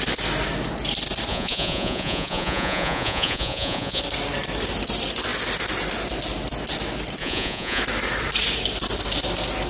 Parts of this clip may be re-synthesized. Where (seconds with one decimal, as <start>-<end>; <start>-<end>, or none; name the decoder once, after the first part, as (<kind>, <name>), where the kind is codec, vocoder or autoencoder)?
1.3-4.0 (vocoder, Vocos); 7.2-7.8